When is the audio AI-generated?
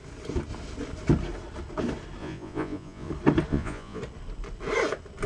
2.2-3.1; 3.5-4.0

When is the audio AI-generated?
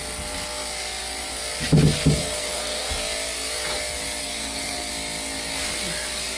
2.2-2.9; 4.2-4.9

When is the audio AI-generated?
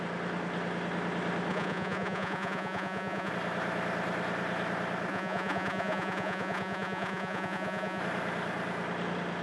1.5-3.3; 5.1-8.0